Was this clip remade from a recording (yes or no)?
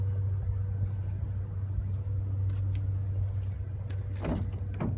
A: no